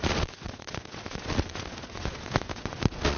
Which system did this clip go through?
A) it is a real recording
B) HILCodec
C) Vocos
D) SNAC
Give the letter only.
C